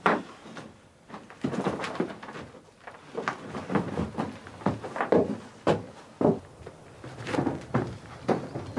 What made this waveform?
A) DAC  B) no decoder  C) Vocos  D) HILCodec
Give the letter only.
B